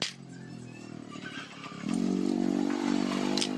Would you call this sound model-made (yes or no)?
no